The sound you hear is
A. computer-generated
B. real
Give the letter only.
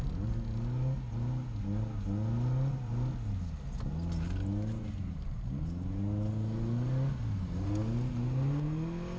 B